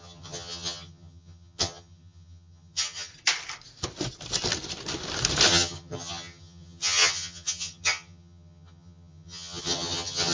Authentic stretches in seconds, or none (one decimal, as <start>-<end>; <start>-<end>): 3.1-5.5